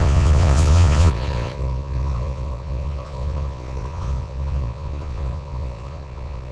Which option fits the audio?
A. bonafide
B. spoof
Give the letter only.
B